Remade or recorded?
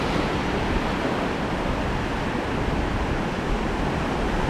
remade